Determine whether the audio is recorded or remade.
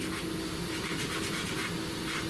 recorded